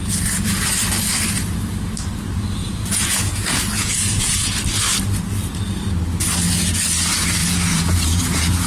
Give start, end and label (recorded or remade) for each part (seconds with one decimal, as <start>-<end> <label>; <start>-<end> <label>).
0.0-2.6 recorded; 2.6-4.5 remade; 4.5-7.4 recorded; 7.4-8.7 remade